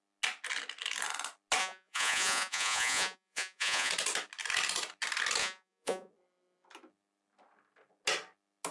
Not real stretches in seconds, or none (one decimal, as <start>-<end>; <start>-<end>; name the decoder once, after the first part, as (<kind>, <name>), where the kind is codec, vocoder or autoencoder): 1.6-3.9 (vocoder, Vocos); 5.4-6.1